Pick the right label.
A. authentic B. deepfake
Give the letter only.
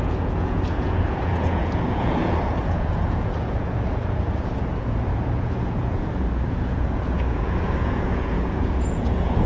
B